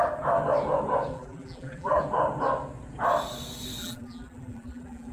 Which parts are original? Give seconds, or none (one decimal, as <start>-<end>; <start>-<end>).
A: 0.0-1.1; 2.0-3.8